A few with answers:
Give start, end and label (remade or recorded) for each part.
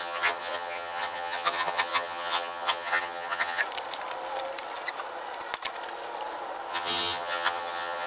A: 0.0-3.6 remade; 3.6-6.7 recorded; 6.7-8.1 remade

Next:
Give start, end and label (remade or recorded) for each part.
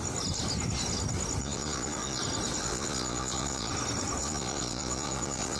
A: 0.0-1.4 recorded; 1.4-2.2 remade; 2.2-2.6 recorded; 2.6-3.7 remade; 3.7-4.2 recorded; 4.2-5.6 remade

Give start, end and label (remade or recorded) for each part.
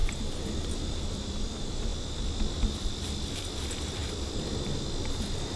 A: 0.0-0.7 recorded; 0.7-5.6 remade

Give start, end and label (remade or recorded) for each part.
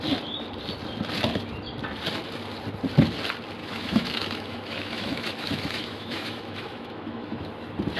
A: 0.0-3.6 recorded; 3.6-7.5 remade; 7.5-8.0 recorded